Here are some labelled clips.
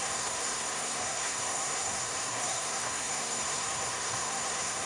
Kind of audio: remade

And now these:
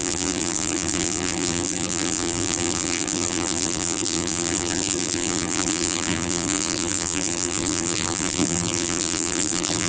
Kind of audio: remade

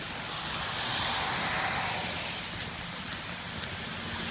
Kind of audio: recorded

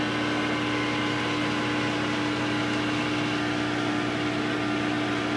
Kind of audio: recorded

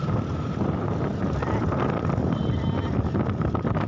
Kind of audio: recorded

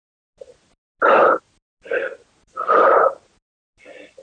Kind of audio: recorded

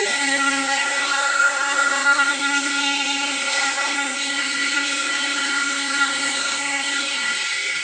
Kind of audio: remade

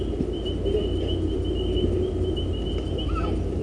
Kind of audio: recorded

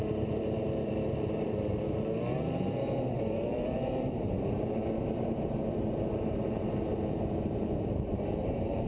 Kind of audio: remade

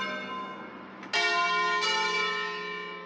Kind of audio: recorded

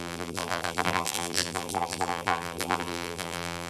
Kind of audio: remade